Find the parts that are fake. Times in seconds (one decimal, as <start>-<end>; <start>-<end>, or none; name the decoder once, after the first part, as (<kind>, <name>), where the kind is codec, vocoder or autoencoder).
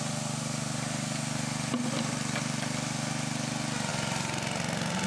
none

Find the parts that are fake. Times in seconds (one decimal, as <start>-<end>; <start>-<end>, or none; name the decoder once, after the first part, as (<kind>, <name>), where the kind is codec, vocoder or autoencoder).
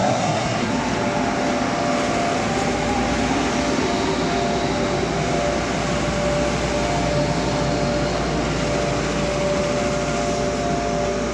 0.0-0.7 (codec, SNAC)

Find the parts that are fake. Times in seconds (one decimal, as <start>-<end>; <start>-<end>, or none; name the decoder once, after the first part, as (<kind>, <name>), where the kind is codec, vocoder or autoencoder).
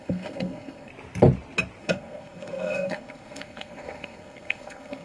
0.0-0.9 (codec, SNAC); 1.8-5.0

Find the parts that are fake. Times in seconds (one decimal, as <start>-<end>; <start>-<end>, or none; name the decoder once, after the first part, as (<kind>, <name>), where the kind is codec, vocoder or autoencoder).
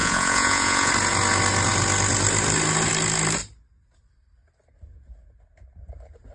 0.0-0.9 (vocoder, Vocos)